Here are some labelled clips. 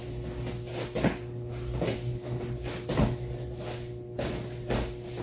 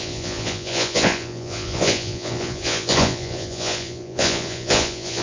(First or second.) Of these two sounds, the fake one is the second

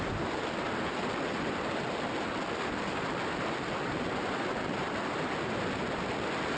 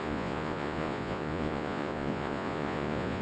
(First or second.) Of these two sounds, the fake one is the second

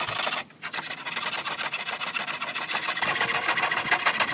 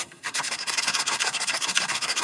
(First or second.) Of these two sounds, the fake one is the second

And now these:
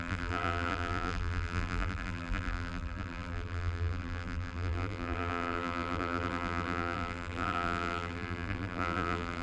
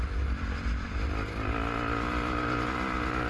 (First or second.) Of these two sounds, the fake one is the first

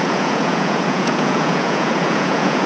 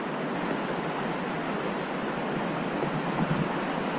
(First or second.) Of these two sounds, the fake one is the first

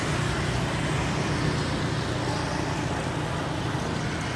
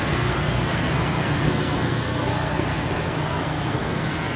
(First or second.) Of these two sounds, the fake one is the second